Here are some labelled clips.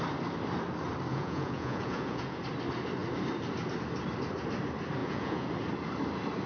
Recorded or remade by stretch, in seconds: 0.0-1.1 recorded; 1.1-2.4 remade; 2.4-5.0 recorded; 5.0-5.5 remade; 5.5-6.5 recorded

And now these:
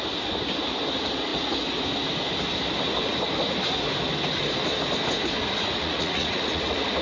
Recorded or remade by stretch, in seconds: 0.0-5.8 recorded; 5.8-6.6 remade; 6.6-7.0 recorded